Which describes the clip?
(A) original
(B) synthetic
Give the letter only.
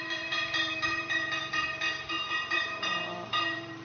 B